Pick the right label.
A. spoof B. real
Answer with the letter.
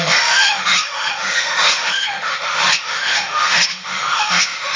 A